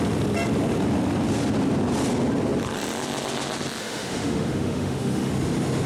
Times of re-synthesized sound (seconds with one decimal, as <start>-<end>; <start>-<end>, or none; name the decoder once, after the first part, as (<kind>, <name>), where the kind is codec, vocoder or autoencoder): 3.8-5.3 (autoencoder, DAC-VAE)